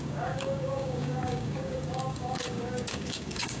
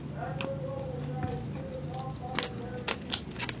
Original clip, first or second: second